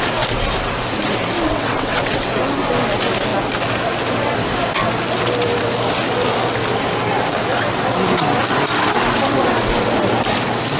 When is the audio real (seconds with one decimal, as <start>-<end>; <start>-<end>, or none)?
0.0-1.5; 2.3-10.8